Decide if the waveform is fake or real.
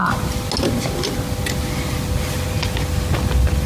real